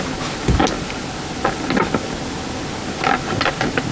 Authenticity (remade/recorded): recorded